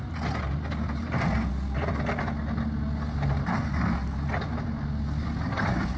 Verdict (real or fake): real